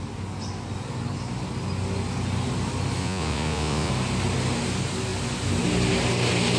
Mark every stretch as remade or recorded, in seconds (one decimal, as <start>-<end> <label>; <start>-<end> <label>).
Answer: 0.0-3.0 recorded; 3.0-3.9 remade; 3.9-6.6 recorded